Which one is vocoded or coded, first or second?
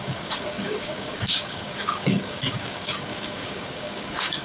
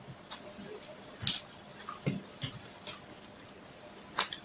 first